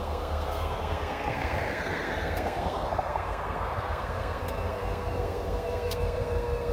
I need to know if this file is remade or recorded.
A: remade